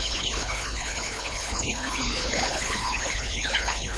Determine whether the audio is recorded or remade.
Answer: remade